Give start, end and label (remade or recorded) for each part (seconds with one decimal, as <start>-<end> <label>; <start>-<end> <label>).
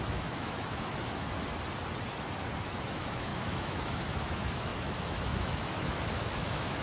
0.0-1.2 remade; 1.2-2.6 recorded; 2.6-6.8 remade